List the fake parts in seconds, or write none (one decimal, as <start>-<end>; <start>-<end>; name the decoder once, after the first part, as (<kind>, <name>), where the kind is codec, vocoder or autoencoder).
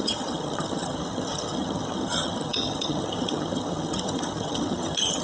0.0-5.2 (vocoder, HiFi-GAN)